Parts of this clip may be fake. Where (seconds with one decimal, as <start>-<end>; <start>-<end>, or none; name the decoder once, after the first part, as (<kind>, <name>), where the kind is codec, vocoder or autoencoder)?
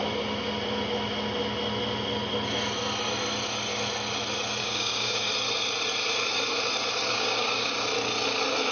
4.6-5.3 (codec, DAC); 7.1-7.7